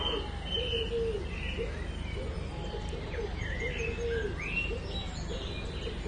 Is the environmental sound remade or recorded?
recorded